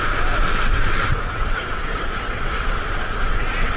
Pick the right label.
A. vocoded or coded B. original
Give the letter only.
A